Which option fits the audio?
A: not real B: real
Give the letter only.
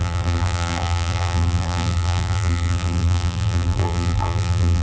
A